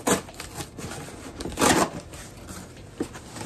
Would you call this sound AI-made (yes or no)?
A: no